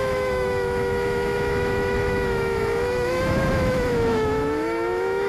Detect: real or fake fake